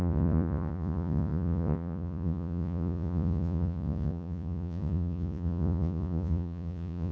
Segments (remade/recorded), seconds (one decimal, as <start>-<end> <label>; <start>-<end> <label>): 0.0-7.1 remade